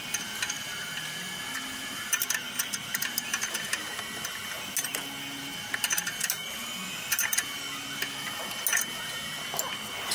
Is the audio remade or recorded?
recorded